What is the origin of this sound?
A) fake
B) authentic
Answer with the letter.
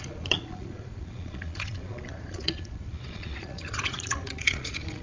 A